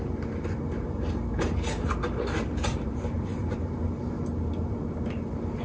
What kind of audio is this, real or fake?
fake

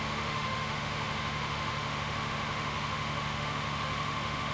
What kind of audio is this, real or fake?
fake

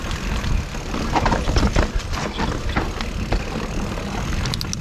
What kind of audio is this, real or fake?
real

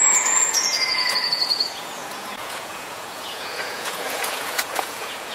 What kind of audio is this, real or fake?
fake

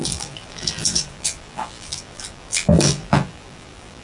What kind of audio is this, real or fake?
fake